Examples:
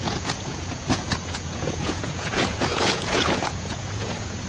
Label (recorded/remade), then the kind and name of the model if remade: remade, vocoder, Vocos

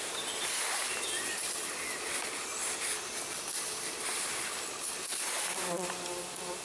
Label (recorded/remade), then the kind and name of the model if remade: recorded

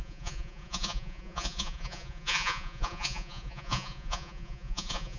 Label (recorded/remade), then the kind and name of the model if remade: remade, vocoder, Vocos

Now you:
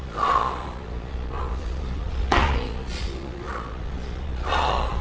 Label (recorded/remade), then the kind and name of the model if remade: remade, vocoder, Vocos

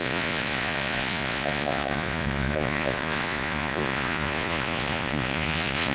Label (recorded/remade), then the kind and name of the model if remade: remade, vocoder, Vocos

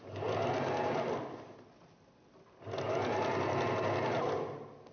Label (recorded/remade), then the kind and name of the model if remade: recorded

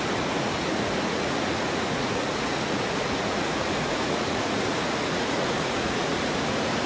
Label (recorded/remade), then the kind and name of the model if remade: remade, vocoder, Vocos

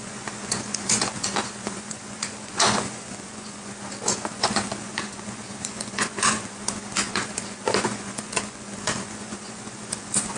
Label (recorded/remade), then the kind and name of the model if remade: remade, vocoder, Vocos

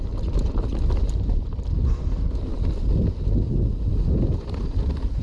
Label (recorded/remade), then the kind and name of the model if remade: recorded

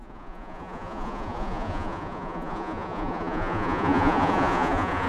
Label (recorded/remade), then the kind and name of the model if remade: remade, vocoder, Vocos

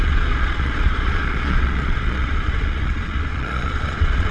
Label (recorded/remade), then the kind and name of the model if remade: remade, vocoder, Vocos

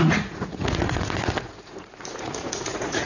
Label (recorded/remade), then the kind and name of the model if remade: remade, vocoder, Vocos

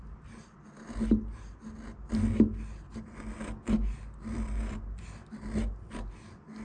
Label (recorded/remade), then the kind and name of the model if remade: recorded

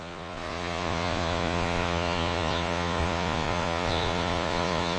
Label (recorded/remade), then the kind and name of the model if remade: remade, vocoder, Vocos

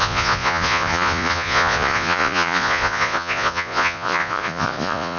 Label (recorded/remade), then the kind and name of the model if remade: remade, vocoder, Vocos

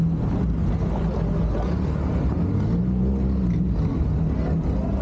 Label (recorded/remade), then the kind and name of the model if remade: recorded